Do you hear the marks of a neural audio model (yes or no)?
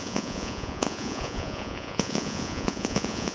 yes